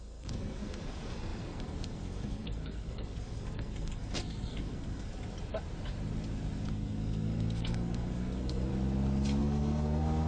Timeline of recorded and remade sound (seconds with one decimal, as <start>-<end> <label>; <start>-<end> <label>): 0.0-5.1 remade; 5.1-6.7 recorded; 6.7-8.7 remade; 8.7-9.4 recorded; 9.4-10.3 remade